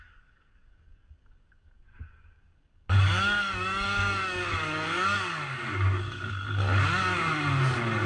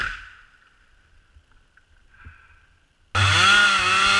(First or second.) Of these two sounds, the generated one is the first